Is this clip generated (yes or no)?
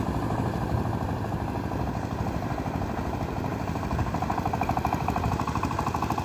no